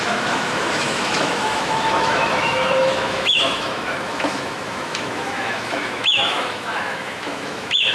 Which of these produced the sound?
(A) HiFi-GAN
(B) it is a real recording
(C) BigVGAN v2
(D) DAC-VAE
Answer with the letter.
D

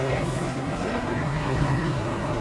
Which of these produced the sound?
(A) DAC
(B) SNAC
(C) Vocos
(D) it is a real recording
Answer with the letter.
B